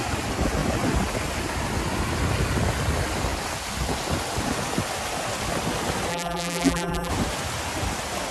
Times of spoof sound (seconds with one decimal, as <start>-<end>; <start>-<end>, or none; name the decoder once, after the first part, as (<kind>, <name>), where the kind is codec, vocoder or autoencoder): 6.1-7.1 (vocoder, BigVGAN v2)